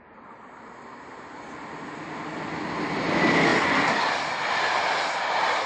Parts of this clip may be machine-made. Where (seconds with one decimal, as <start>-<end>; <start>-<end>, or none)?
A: none